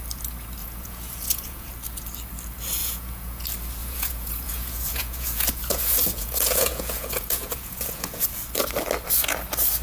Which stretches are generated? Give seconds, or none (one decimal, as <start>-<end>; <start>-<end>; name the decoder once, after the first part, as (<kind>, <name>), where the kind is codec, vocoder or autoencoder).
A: 0.6-1.7 (vocoder, Vocos); 2.8-3.4; 3.8-8.3